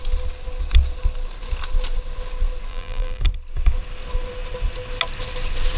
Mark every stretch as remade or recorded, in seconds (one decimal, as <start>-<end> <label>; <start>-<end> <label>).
0.0-2.7 recorded; 2.7-3.2 remade; 3.2-5.8 recorded